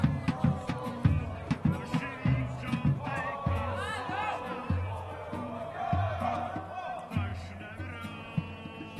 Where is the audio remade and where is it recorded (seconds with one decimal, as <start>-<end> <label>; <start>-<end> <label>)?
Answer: 0.0-1.9 recorded; 1.9-6.3 remade; 6.3-7.3 recorded; 7.3-7.8 remade; 7.8-9.0 recorded